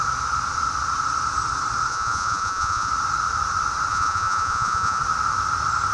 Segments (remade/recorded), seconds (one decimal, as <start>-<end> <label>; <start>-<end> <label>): 0.0-1.9 recorded; 1.9-2.9 remade; 2.9-3.9 recorded; 3.9-5.0 remade; 5.0-5.9 recorded